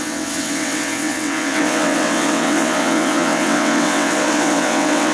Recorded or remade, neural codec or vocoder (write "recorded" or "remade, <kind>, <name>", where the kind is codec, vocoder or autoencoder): remade, vocoder, WaveNeXt